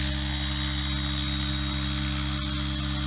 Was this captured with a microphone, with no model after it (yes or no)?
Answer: yes